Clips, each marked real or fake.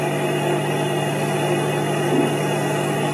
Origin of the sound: real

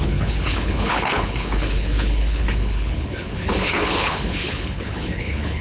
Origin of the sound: fake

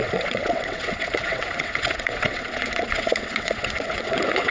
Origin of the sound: fake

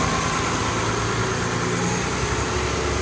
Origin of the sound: real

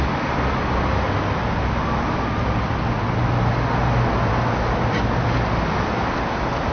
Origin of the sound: real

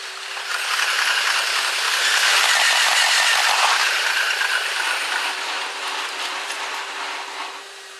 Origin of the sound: real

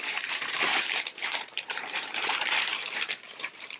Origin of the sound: fake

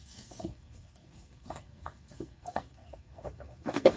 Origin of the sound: fake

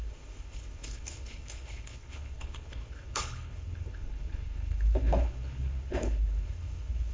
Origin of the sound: fake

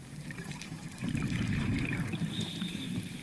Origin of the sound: fake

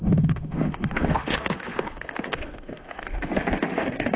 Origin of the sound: fake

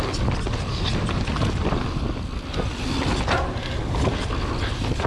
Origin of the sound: real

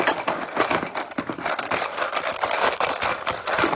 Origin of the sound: real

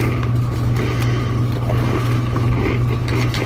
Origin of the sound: real